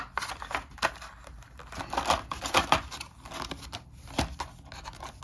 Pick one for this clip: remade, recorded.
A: recorded